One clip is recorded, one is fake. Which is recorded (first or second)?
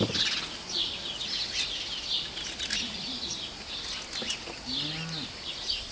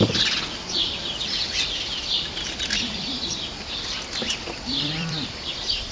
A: first